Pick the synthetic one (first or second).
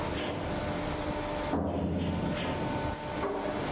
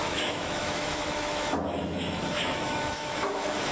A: second